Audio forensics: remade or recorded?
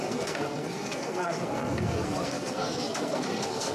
remade